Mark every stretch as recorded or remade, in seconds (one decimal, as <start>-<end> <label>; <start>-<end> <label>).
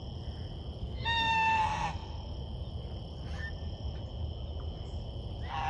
0.0-0.8 recorded; 0.8-1.6 remade; 1.6-5.7 recorded